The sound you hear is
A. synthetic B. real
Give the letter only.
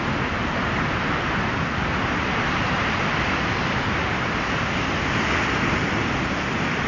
B